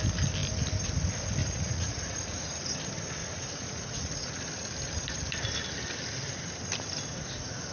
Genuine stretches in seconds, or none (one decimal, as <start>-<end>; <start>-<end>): 0.0-1.4; 2.7-3.2; 4.4-7.7

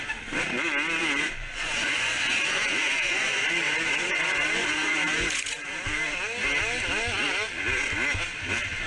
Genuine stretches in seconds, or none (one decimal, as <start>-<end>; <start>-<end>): 0.0-1.0; 5.7-8.9

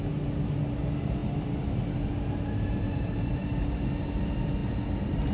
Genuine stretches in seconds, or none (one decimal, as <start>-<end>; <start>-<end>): 0.0-5.3

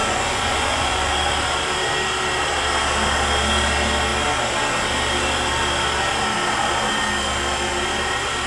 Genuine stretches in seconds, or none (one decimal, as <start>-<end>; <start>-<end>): 1.1-8.5

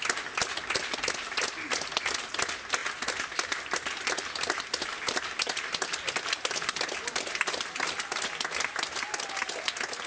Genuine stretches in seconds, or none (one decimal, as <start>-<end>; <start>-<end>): 0.0-10.1

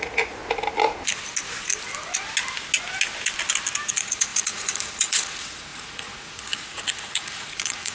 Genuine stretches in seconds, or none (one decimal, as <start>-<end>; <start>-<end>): 0.4-3.9

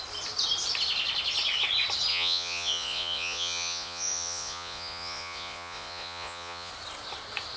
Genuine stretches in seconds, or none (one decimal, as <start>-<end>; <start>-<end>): 0.0-2.1; 6.7-7.6

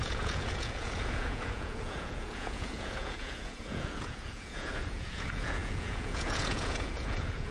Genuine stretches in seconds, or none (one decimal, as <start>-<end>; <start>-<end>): none